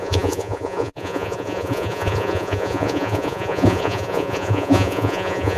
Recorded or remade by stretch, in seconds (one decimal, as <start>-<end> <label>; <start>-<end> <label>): 0.0-5.6 remade